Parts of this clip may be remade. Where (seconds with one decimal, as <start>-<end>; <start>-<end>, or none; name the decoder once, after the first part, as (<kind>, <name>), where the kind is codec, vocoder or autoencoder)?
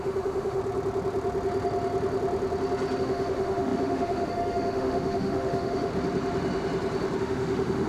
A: 0.0-0.6 (autoencoder, DAC-VAE); 3.0-5.9; 7.2-7.9